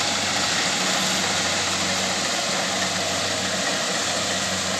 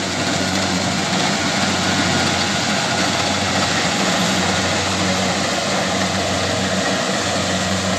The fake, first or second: second